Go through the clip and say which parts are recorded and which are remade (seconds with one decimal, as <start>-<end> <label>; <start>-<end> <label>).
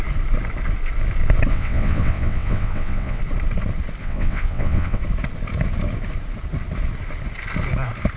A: 0.0-1.5 recorded; 1.5-3.2 remade; 3.2-4.0 recorded; 4.0-5.0 remade; 5.0-8.2 recorded